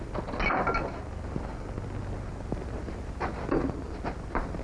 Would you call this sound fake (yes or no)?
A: no